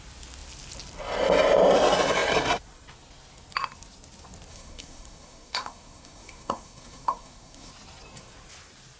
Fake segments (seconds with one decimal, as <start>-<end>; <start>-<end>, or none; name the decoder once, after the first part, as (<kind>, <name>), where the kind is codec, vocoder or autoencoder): 4.5-7.7 (codec, SNAC)